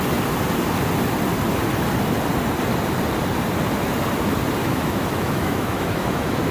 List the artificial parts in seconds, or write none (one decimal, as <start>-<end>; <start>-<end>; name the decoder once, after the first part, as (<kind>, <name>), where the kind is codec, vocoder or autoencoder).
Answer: 4.6-6.5 (autoencoder, DAC-VAE)